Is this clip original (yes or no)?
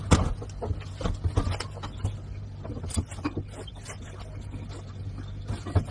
yes